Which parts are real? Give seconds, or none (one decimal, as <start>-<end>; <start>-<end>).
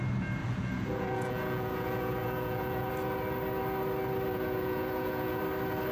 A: 0.0-0.4; 2.9-4.3; 5.4-5.9